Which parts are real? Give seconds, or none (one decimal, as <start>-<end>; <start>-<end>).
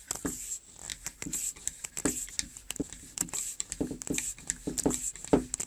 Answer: 0.0-5.7